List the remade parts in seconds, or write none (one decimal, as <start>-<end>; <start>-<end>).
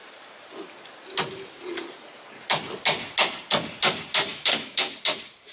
4.3-4.9